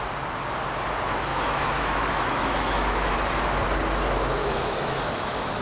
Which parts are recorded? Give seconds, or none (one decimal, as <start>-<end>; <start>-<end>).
0.0-1.3; 3.1-4.4